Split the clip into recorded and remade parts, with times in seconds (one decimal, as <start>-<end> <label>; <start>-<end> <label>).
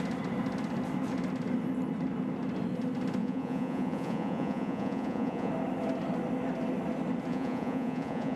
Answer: 0.0-3.2 recorded; 3.2-5.5 remade; 5.5-7.3 recorded; 7.3-8.4 remade